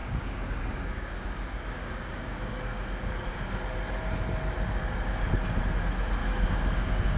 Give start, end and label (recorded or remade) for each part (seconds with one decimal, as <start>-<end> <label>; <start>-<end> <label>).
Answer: 0.0-3.1 remade; 3.1-6.2 recorded; 6.2-7.2 remade